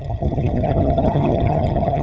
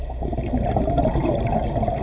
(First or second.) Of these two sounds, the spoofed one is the first